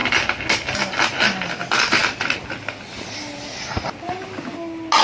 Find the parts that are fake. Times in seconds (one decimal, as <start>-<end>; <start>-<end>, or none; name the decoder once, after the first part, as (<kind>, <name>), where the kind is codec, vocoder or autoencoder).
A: none